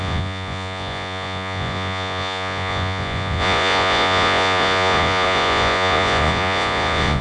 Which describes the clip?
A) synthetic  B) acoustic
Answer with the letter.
A